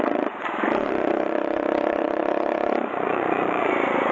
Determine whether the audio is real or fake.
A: fake